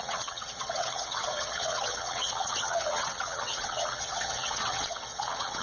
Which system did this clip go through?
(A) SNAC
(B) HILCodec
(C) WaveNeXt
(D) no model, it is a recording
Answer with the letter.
C